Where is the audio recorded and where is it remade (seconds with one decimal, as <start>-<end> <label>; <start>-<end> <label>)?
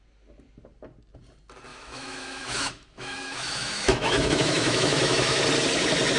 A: 0.0-1.7 recorded; 1.7-5.4 remade; 5.4-6.2 recorded